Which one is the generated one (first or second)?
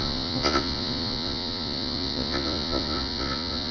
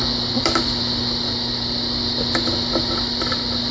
first